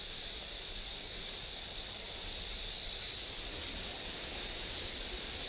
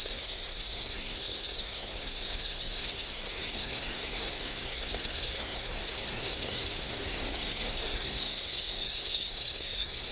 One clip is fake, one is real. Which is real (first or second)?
first